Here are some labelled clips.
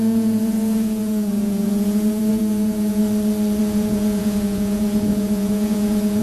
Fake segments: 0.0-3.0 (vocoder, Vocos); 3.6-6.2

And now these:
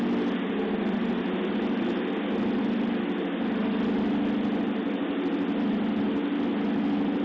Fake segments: none

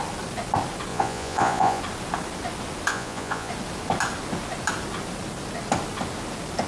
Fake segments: 0.9-1.8 (vocoder, Vocos); 2.9-3.5